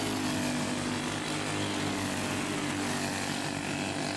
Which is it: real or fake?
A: real